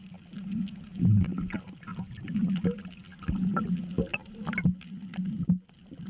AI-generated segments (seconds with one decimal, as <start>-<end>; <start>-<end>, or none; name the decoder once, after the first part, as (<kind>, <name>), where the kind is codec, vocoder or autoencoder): none